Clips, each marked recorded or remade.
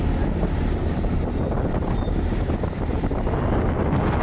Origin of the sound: recorded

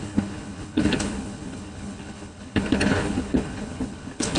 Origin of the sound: remade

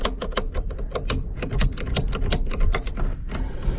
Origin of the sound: recorded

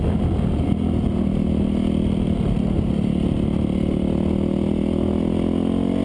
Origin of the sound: recorded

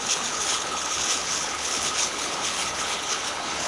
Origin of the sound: remade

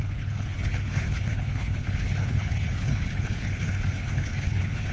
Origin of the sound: remade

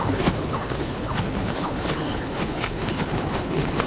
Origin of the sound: remade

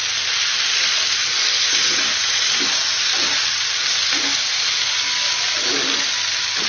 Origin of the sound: recorded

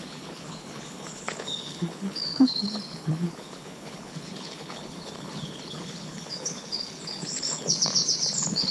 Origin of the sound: remade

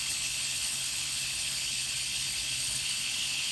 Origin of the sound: remade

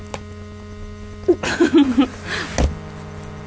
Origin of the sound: recorded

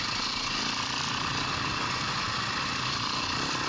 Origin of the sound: recorded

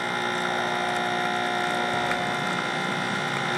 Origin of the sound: recorded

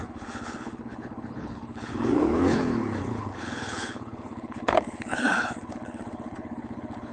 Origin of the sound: remade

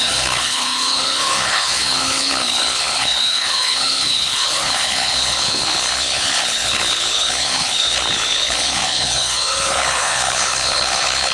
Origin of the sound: remade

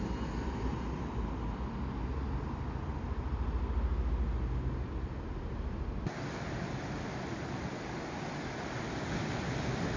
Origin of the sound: recorded